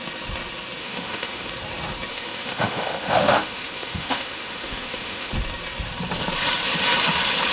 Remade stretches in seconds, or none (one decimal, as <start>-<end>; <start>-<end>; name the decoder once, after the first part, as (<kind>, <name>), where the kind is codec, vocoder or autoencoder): 0.8-1.5 (autoencoder, DAC-VAE); 2.1-5.3